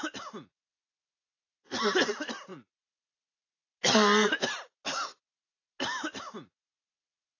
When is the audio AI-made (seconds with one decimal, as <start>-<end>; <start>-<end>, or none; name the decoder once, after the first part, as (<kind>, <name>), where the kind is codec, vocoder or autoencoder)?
none